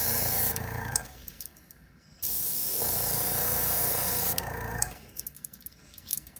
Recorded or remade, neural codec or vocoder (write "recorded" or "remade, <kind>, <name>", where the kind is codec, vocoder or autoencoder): remade, codec, SNAC